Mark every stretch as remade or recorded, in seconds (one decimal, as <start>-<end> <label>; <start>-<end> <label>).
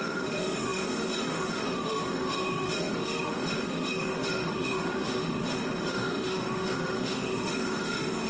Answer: 0.0-8.3 remade